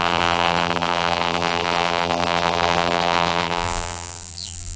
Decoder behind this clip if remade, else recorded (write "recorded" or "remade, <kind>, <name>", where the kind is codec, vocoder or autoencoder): remade, vocoder, BigVGAN v2